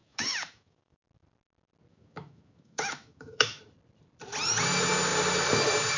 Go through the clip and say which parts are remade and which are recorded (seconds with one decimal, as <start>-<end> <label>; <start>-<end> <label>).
0.0-1.0 remade; 1.0-1.9 recorded; 1.9-3.6 remade; 3.6-6.0 recorded